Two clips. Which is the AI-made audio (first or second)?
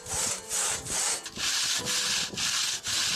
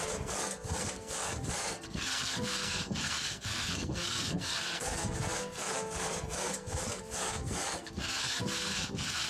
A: second